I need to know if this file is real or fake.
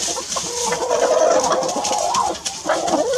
real